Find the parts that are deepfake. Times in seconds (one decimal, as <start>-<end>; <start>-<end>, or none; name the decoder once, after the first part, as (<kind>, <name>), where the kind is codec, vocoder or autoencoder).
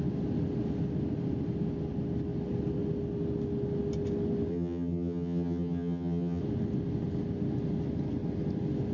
4.5-6.4 (vocoder, HiFi-GAN)